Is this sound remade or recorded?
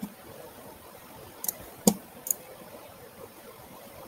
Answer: remade